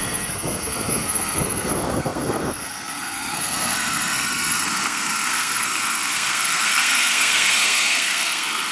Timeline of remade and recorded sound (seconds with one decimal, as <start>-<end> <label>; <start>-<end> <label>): 0.0-8.7 remade